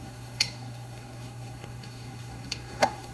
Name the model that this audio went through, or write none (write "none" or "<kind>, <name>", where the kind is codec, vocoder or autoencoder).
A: codec, SNAC